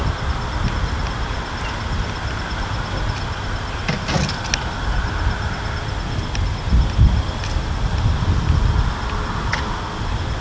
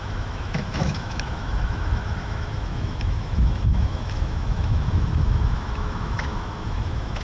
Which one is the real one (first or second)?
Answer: first